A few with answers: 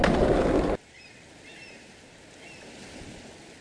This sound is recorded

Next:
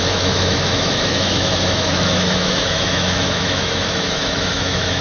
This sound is remade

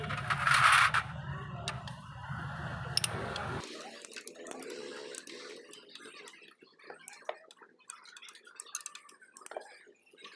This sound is recorded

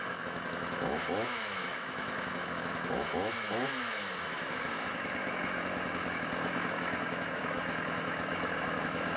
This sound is remade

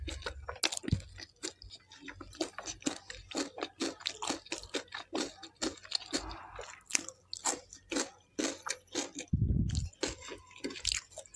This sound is recorded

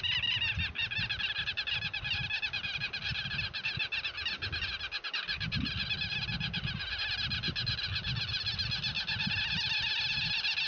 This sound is recorded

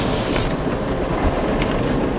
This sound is recorded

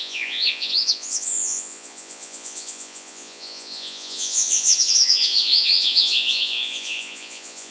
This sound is remade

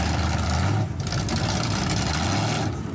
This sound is recorded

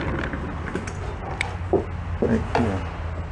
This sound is recorded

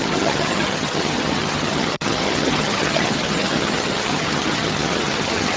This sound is remade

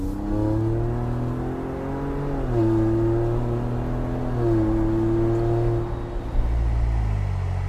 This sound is recorded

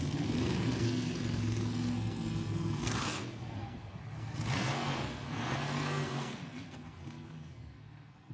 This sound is remade